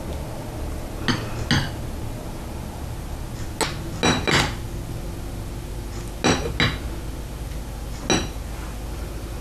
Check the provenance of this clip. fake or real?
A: real